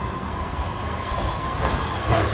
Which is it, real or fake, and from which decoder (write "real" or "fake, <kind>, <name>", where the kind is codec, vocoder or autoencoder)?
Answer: fake, codec, SNAC